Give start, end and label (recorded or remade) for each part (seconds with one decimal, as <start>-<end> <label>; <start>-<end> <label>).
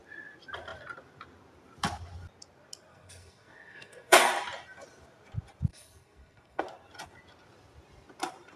0.0-2.9 recorded; 2.9-4.3 remade; 4.3-5.7 recorded; 5.7-6.6 remade; 6.6-8.6 recorded